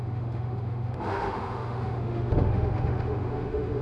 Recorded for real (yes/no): no